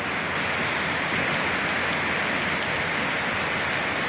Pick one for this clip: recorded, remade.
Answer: recorded